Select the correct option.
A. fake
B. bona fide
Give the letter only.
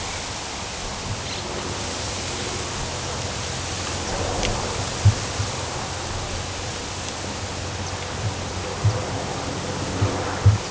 B